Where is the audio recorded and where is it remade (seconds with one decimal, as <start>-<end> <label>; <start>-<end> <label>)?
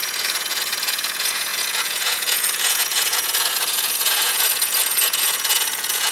0.0-6.1 remade